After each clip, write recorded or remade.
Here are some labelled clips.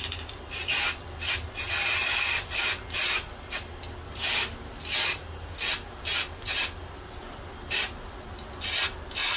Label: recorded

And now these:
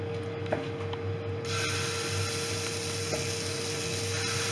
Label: recorded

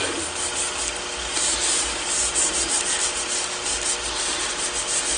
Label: recorded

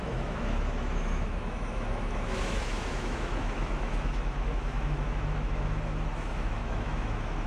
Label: remade